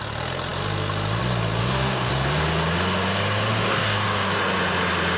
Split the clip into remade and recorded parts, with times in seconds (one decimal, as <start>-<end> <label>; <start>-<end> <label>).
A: 0.0-1.6 recorded; 1.6-2.1 remade; 2.1-3.5 recorded; 3.5-4.3 remade; 4.3-5.2 recorded